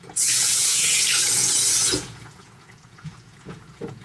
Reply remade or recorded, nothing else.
remade